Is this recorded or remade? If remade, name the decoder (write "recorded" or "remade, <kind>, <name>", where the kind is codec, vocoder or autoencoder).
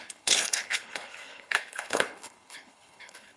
remade, codec, HILCodec